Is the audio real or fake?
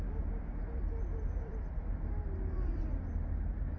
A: real